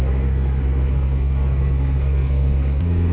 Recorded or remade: remade